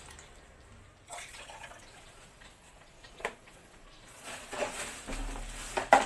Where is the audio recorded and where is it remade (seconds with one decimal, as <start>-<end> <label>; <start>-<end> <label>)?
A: 0.0-1.1 recorded; 1.1-4.8 remade; 4.8-6.1 recorded